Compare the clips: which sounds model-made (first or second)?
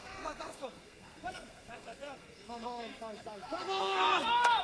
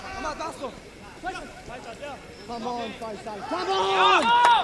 first